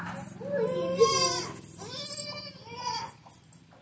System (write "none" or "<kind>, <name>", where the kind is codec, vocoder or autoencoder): none